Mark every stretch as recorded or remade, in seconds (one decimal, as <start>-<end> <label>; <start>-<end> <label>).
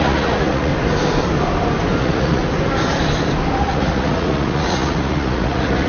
0.0-0.7 remade; 0.7-2.0 recorded; 2.0-2.4 remade; 2.4-3.6 recorded; 3.6-5.9 remade